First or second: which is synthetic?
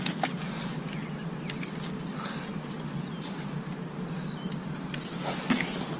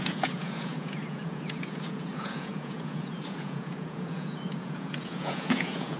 second